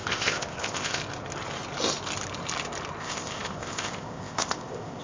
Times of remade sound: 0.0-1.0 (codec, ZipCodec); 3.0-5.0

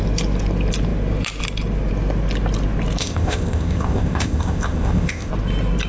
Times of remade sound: 3.0-5.3 (codec, ZipCodec)